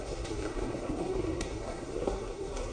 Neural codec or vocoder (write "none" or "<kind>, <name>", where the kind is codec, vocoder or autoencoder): codec, SNAC